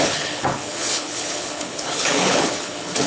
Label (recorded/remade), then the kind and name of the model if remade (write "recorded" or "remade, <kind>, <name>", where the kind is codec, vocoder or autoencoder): remade, codec, HILCodec